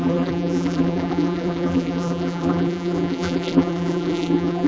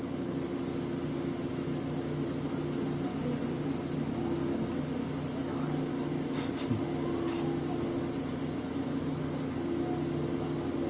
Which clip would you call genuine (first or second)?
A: second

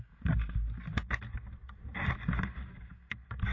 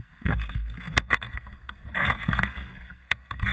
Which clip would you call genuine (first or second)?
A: first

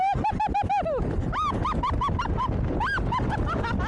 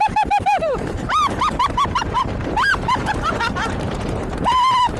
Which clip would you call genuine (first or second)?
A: first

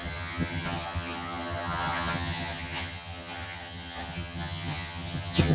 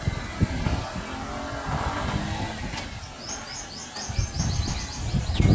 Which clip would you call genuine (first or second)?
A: second